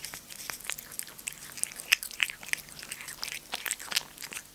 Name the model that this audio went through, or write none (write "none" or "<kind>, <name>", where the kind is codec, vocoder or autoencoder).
none